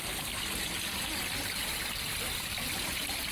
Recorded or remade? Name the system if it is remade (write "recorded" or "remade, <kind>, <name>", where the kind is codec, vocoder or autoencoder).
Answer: recorded